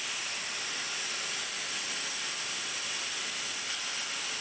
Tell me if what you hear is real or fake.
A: real